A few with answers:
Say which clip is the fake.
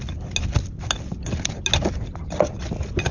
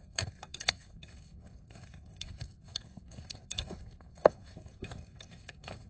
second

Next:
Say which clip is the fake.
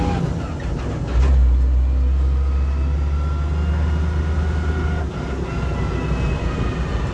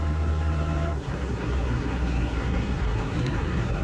second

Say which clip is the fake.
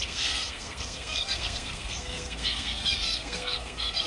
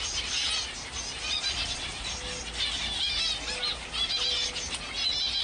first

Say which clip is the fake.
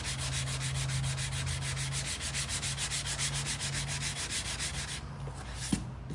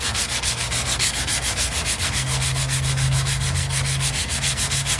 second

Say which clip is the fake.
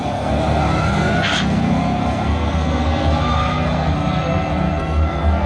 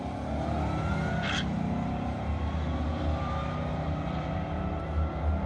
first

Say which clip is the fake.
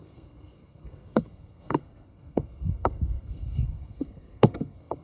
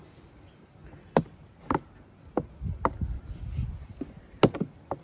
first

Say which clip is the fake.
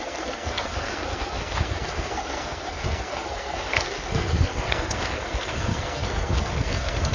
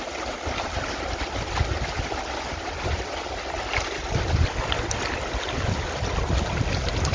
first